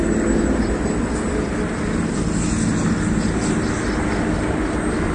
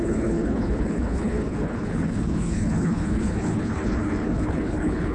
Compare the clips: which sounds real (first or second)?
first